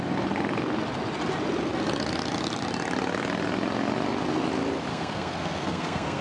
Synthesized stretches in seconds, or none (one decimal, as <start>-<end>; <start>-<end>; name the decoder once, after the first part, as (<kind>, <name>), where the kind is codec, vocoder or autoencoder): 4.9-6.2 (codec, SNAC)